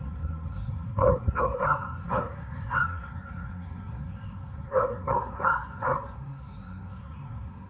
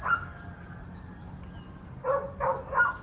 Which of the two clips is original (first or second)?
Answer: second